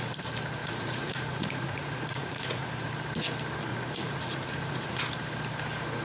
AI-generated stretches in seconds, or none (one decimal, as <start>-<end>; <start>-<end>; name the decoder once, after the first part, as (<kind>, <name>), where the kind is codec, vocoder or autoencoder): 0.6-2.7 (vocoder, Vocos); 3.7-5.0